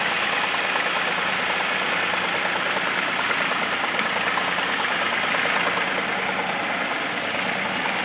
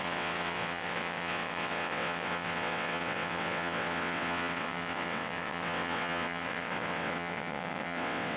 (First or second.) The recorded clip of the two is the first